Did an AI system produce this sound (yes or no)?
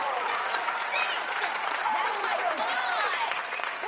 yes